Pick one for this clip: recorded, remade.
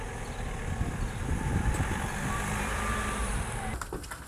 recorded